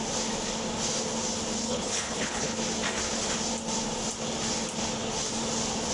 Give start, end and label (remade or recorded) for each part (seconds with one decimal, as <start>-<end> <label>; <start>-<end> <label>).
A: 0.0-1.6 recorded; 1.6-2.6 remade; 2.6-5.9 recorded

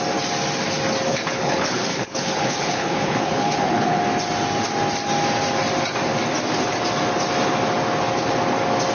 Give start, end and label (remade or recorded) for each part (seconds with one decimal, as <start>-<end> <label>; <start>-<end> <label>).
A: 0.0-1.1 recorded; 1.1-4.0 remade; 4.0-8.9 recorded

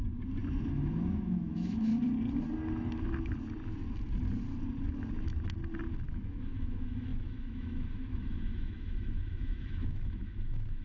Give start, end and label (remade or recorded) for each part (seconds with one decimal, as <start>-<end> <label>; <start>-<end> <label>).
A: 0.0-0.7 recorded; 0.7-1.9 remade; 1.9-6.1 recorded; 6.1-10.8 remade

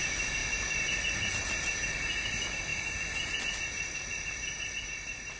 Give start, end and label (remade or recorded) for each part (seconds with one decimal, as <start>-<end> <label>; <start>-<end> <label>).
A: 0.0-5.4 recorded

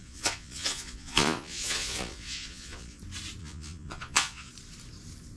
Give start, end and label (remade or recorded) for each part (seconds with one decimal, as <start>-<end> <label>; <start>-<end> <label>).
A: 0.0-3.0 remade; 3.0-3.4 recorded; 3.4-4.5 remade; 4.5-5.4 recorded

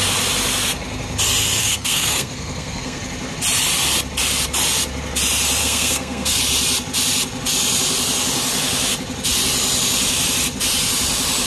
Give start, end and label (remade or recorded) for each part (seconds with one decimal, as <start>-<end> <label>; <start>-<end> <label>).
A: 0.0-1.6 recorded; 1.6-3.0 remade; 3.0-5.6 recorded; 5.6-6.4 remade; 6.4-11.5 recorded